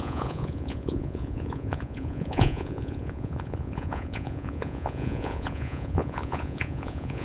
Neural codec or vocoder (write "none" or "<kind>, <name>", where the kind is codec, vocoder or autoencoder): vocoder, Vocos